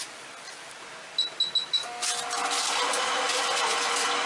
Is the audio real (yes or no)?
yes